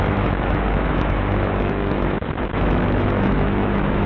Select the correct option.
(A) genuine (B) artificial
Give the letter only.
B